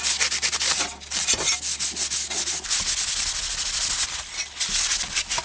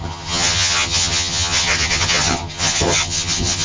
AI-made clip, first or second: second